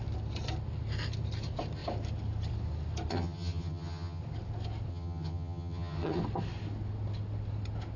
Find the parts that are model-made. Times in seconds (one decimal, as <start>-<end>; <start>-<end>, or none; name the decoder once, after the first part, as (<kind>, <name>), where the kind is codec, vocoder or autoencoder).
3.1-4.2 (vocoder, HiFi-GAN); 4.9-6.2